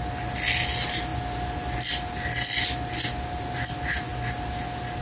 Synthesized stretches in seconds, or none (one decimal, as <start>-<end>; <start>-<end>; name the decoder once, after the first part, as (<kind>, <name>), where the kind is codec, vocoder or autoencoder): none